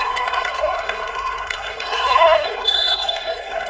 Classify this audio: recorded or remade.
remade